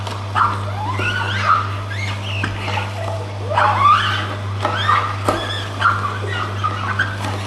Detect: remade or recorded recorded